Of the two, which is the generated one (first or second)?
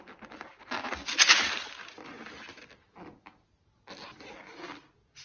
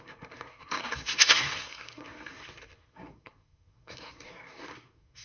second